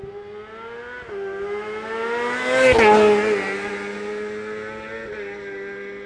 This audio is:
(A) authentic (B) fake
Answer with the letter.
A